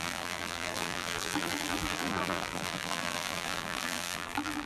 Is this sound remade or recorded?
remade